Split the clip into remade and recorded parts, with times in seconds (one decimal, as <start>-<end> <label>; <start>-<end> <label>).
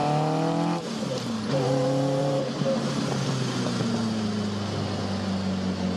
0.0-2.2 recorded; 2.2-3.3 remade; 3.3-6.0 recorded